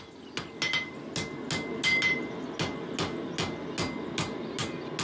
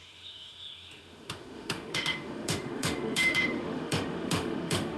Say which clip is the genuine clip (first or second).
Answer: first